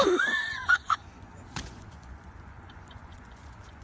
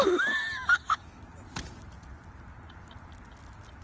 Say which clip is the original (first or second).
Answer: second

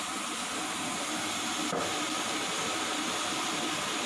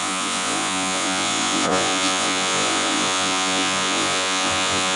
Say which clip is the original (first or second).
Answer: first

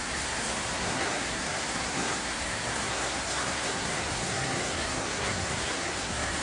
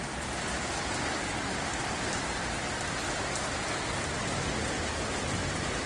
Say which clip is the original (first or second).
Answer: second